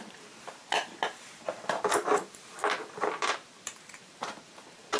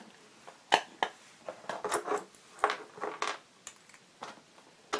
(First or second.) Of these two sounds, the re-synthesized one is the first